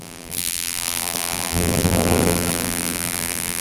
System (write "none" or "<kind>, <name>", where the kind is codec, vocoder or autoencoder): vocoder, BigVGAN v2